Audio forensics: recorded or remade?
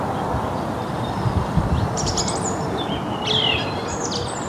recorded